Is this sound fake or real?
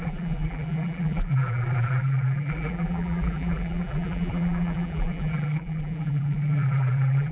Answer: fake